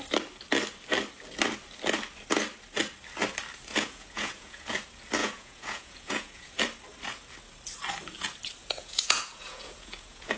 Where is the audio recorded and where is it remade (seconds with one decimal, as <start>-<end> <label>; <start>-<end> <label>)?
0.0-3.7 recorded; 3.7-4.7 remade; 4.7-5.2 recorded; 5.2-6.6 remade; 6.6-8.6 recorded; 8.6-10.4 remade